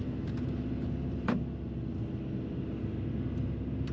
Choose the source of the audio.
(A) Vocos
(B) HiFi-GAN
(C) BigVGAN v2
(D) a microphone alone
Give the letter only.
D